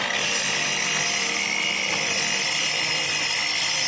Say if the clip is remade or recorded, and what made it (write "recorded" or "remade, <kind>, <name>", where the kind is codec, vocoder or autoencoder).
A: recorded